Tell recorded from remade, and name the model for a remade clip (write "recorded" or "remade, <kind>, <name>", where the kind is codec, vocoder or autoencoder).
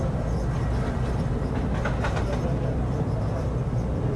recorded